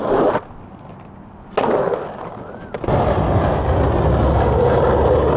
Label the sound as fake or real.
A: real